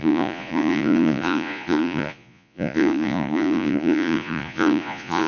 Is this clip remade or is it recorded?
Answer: remade